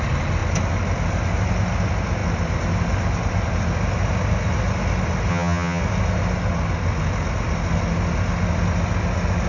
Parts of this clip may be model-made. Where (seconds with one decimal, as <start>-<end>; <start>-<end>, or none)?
5.3-5.8